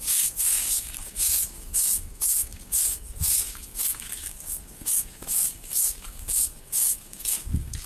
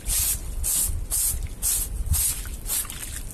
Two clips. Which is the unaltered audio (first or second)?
second